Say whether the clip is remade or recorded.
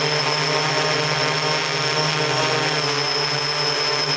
recorded